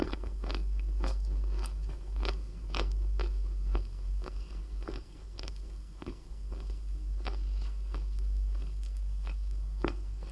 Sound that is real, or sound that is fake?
fake